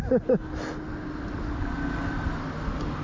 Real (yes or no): yes